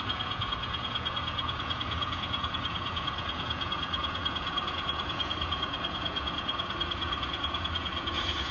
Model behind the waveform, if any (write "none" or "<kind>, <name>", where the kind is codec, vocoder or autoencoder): vocoder, Vocos